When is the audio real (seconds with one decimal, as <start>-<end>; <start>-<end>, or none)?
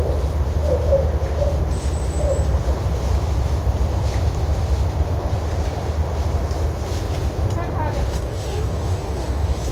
0.0-8.1